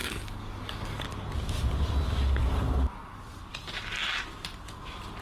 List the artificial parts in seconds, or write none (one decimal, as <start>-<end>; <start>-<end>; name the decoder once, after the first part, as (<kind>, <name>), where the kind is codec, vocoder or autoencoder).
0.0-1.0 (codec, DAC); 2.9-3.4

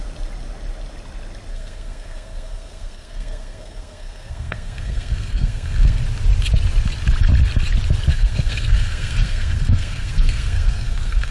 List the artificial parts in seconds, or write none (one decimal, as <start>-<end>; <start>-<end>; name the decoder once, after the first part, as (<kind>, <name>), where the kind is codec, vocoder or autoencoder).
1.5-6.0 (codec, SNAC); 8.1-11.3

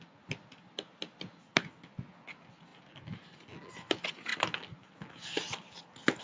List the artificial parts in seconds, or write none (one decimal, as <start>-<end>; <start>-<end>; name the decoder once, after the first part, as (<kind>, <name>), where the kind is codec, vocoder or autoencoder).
none

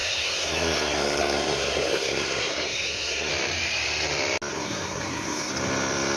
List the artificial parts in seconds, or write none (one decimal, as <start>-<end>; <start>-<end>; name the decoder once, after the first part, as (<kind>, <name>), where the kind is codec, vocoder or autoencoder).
0.0-3.3 (codec, SNAC); 4.5-5.5

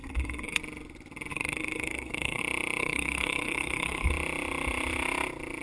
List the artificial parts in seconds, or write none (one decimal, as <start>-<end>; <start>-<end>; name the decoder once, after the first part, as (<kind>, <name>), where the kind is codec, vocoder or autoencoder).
0.0-0.6 (codec, SNAC); 1.3-2.4; 2.8-4.1

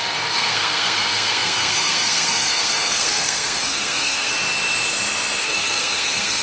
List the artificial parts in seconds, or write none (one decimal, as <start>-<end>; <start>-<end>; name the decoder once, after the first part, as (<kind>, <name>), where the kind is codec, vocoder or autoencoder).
0.0-4.3 (codec, SNAC); 5.4-6.4